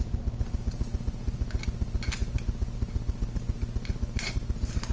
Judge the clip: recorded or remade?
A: recorded